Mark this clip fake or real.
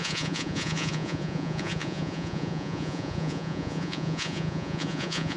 fake